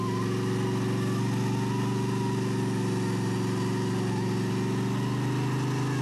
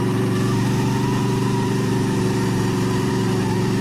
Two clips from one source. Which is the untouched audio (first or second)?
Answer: first